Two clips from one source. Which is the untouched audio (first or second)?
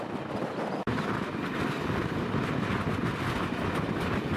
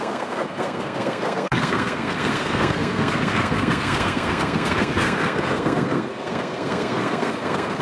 first